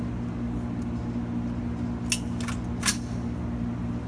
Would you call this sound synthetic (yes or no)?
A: no